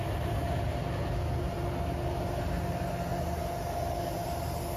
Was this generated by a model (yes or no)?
no